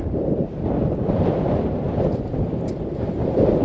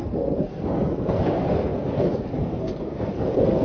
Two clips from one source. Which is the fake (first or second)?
second